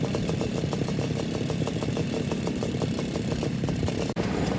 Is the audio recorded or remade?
remade